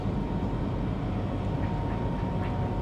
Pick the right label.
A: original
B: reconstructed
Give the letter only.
A